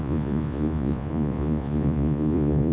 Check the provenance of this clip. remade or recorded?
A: remade